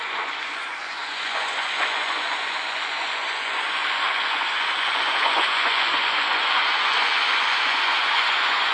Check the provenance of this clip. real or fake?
fake